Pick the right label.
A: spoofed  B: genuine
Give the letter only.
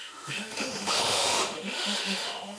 A